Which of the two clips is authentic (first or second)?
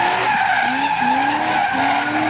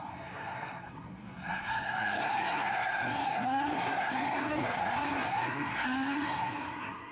first